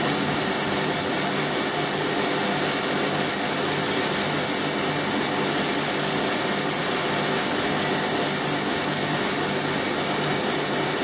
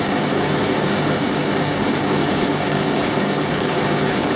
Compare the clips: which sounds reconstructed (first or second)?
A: second